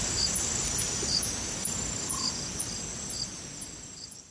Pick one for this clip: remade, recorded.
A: remade